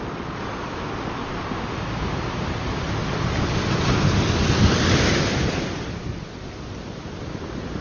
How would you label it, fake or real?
real